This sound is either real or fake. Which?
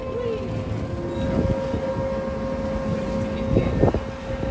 real